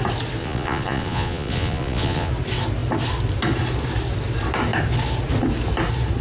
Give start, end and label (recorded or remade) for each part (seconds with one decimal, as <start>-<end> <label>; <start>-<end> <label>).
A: 0.0-0.4 recorded; 0.4-2.3 remade; 2.3-6.2 recorded